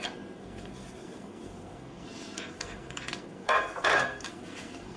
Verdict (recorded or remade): remade